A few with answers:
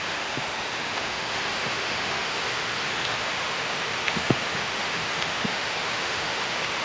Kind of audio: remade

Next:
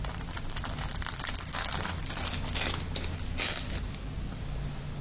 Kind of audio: recorded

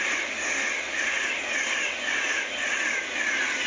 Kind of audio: recorded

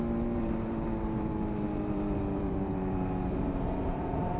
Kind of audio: remade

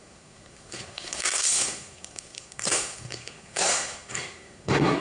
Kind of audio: remade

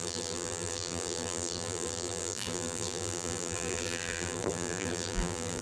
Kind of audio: remade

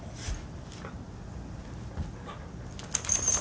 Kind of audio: recorded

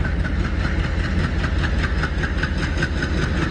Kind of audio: recorded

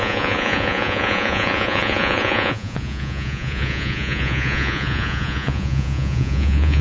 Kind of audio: remade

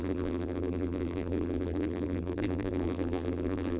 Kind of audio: remade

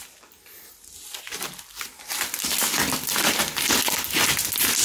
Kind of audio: recorded